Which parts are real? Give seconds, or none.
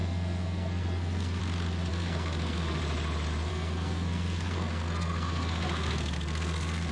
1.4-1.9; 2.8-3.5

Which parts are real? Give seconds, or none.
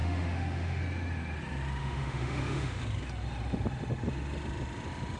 0.8-1.8; 2.8-5.2